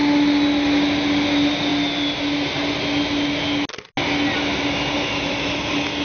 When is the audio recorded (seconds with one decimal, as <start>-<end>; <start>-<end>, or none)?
0.0-6.0